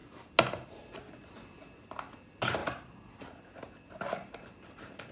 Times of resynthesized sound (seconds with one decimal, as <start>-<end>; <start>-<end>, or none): none